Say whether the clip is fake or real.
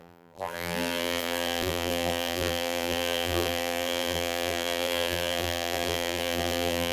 fake